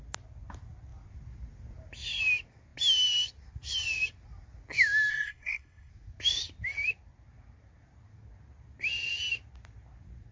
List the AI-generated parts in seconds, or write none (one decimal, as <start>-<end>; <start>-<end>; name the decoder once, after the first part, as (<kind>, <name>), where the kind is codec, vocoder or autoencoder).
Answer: 5.1-5.9 (codec, SNAC)